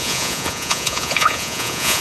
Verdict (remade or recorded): remade